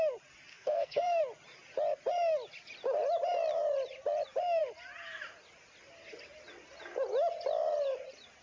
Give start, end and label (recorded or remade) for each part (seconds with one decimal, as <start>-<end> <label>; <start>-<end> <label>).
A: 0.0-0.5 recorded; 0.5-1.2 remade; 1.2-8.4 recorded